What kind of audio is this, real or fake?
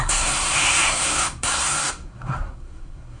fake